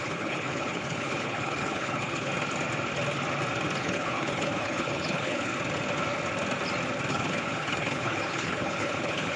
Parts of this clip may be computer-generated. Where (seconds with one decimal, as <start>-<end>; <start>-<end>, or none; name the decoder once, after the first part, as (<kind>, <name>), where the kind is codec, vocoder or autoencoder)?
0.0-2.3 (codec, HILCodec); 3.8-5.5; 7.1-9.4